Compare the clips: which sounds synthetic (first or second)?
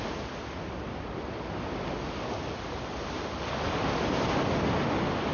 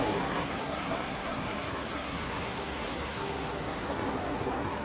second